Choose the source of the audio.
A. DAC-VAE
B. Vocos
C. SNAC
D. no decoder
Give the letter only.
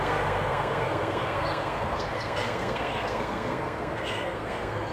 C